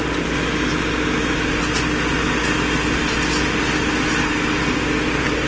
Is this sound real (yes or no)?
yes